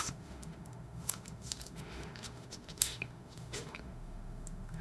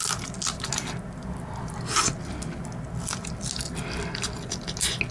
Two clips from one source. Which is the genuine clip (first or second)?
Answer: second